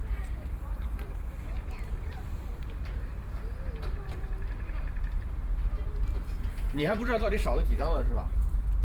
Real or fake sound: fake